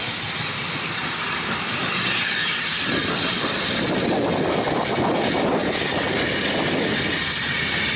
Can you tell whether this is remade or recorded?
recorded